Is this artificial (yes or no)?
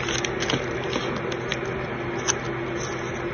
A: no